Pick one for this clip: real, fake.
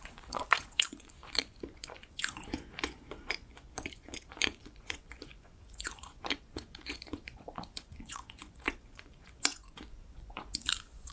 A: fake